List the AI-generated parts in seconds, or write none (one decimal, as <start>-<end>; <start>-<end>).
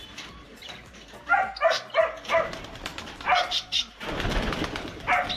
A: none